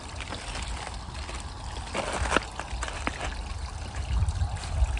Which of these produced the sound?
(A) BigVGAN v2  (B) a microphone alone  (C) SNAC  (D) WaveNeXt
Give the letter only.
B